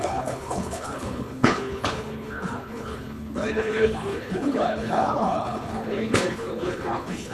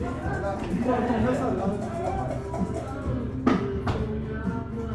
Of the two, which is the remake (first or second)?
first